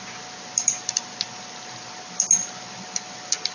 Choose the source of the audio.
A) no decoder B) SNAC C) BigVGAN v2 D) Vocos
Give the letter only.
A